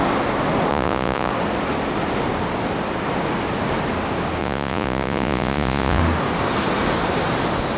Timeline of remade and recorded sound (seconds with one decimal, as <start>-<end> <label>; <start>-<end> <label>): 0.0-0.7 recorded; 0.7-1.3 remade; 1.3-4.4 recorded; 4.4-6.0 remade; 6.0-7.8 recorded